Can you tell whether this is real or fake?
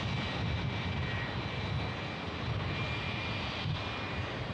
real